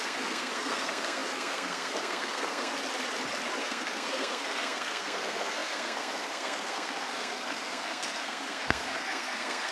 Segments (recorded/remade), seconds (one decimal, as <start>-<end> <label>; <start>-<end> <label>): 0.0-2.7 remade; 2.7-3.6 recorded; 3.6-9.7 remade